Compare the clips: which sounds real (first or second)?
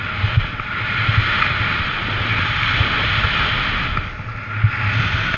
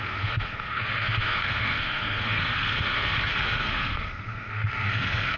first